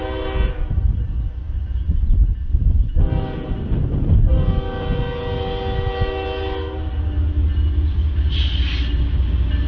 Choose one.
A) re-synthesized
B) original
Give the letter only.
B